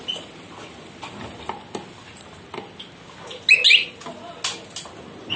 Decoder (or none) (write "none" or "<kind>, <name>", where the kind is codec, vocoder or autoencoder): none